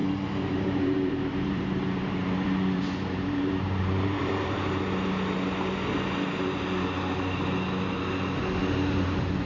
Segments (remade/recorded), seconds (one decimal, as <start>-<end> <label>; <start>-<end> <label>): 0.0-4.8 remade; 4.8-9.5 recorded

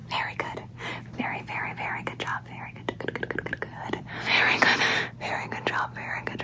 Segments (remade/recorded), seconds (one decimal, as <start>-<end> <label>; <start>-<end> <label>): 0.0-1.2 remade; 1.2-2.3 recorded; 2.3-6.4 remade

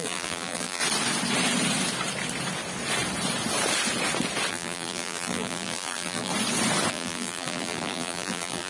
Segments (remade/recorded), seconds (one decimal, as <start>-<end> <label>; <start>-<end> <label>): 0.0-0.8 remade; 0.8-4.5 recorded; 4.5-6.3 remade; 6.3-6.9 recorded; 6.9-8.7 remade

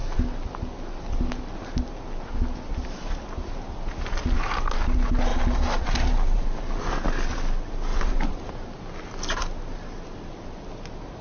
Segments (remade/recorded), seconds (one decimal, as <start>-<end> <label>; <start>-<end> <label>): 0.0-5.3 recorded; 5.3-6.6 remade; 6.6-7.9 recorded; 7.9-8.5 remade; 8.5-11.2 recorded

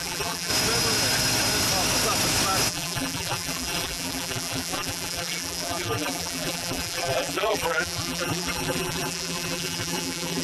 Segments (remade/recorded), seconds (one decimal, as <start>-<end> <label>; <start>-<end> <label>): 0.0-0.5 remade; 0.5-2.7 recorded; 2.7-10.4 remade

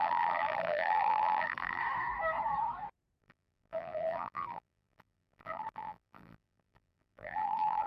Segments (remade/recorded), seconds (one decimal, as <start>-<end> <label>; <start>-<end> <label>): 0.0-1.8 remade; 1.8-3.2 recorded; 3.2-7.9 remade